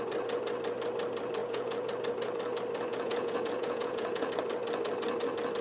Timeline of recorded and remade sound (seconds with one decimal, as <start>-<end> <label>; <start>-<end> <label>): 0.0-1.4 recorded; 1.4-1.9 remade; 1.9-2.9 recorded; 2.9-4.3 remade; 4.3-5.6 recorded